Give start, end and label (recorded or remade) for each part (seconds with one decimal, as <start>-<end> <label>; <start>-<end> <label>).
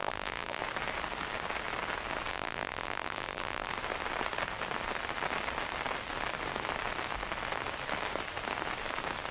0.0-0.6 remade; 0.6-2.3 recorded; 2.3-3.7 remade; 3.7-9.3 recorded